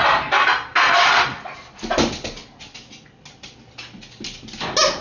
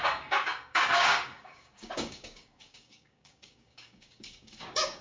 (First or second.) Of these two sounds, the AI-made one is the second